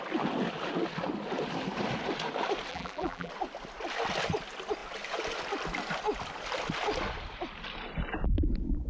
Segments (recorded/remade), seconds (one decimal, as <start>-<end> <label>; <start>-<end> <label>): 0.0-2.7 recorded; 2.7-3.3 remade; 3.3-8.9 recorded